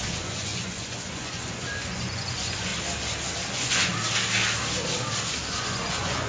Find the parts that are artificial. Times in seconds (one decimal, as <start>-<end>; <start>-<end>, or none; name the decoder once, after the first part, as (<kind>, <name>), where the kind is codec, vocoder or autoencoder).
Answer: 0.0-2.7 (vocoder, Vocos); 3.5-3.9; 5.4-6.3

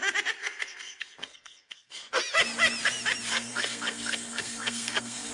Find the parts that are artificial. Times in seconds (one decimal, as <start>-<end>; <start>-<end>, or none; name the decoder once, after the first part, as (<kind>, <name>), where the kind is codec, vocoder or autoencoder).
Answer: 0.4-2.2 (codec, SNAC); 3.3-5.3